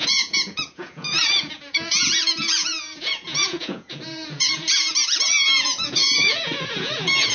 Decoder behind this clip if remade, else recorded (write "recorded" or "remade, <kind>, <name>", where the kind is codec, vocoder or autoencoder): remade, vocoder, Vocos